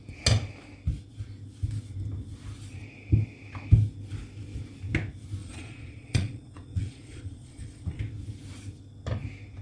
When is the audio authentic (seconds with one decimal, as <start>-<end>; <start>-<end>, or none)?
0.0-5.4; 8.0-9.6